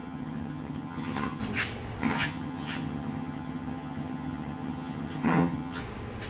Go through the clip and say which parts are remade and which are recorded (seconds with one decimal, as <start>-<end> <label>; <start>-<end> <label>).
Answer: 0.0-1.4 remade; 1.4-2.0 recorded; 2.0-5.8 remade; 5.8-6.3 recorded